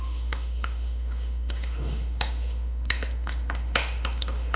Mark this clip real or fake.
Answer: fake